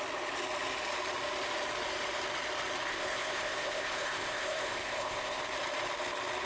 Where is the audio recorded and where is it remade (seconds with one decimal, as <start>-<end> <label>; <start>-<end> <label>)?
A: 0.0-2.9 recorded; 2.9-5.4 remade; 5.4-6.5 recorded